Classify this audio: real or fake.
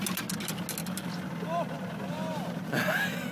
real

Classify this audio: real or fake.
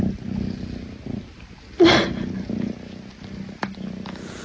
real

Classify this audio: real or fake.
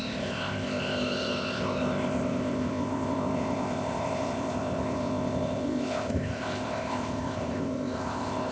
fake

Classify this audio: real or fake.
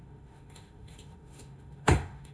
fake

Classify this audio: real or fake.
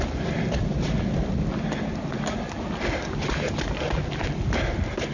real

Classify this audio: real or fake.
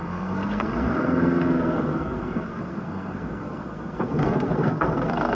fake